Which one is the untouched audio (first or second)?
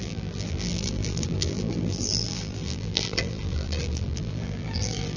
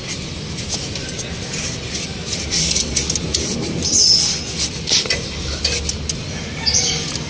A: second